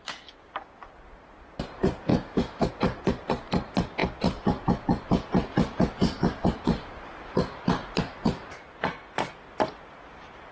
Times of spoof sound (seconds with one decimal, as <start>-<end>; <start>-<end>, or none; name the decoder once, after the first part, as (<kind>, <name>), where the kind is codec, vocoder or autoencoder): 2.1-2.7 (autoencoder, DAC-VAE)